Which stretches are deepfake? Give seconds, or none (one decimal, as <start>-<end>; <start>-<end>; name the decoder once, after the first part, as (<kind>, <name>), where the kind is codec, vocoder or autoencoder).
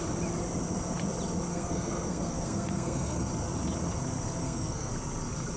1.5-3.3 (codec, SNAC); 4.4-4.9